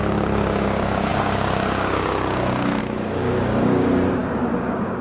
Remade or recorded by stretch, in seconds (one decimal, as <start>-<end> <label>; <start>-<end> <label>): 0.0-5.0 remade